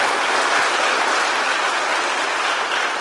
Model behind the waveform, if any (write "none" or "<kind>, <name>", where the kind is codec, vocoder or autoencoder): none